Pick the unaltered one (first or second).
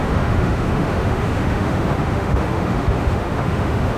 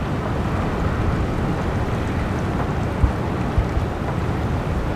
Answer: second